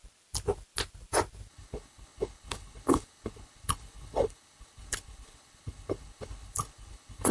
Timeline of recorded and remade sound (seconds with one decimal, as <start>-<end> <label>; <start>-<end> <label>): 0.0-1.5 recorded; 1.5-7.3 remade

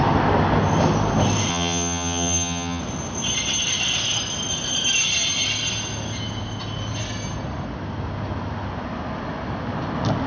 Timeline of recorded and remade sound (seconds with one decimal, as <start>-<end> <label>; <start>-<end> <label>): 0.0-1.5 recorded; 1.5-2.8 remade; 2.8-10.3 recorded

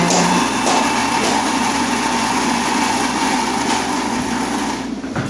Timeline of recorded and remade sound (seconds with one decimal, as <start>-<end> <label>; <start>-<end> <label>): 0.0-1.0 recorded; 1.0-4.2 remade; 4.2-5.3 recorded

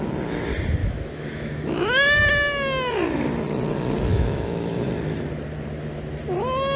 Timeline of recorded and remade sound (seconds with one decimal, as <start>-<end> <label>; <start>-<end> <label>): 0.0-0.8 recorded; 0.8-2.2 remade; 2.2-4.1 recorded; 4.1-4.9 remade; 4.9-6.8 recorded

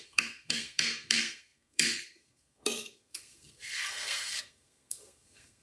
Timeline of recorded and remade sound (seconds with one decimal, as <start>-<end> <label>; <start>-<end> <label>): 0.0-5.6 remade

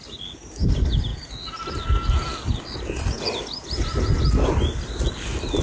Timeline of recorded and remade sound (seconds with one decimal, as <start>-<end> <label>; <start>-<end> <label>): 0.0-5.6 recorded

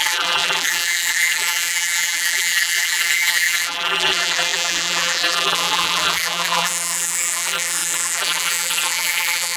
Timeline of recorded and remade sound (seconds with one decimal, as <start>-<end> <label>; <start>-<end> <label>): 0.0-9.6 remade

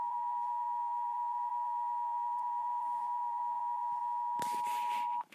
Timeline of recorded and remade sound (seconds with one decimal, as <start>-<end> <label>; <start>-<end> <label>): 0.0-4.0 remade; 4.0-5.3 recorded